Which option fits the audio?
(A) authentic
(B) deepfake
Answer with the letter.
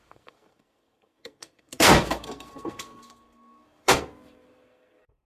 B